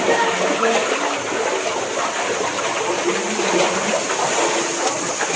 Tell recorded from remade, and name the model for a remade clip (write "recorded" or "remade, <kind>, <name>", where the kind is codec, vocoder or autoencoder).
recorded